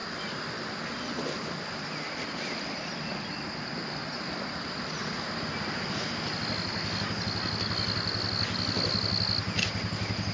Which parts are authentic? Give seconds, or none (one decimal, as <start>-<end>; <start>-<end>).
0.0-10.3